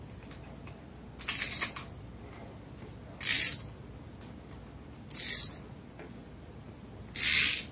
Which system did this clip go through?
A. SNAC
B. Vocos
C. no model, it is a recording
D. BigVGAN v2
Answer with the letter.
C